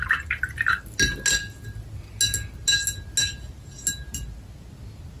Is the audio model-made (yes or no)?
no